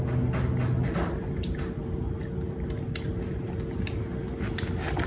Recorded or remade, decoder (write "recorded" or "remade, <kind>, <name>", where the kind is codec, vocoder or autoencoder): recorded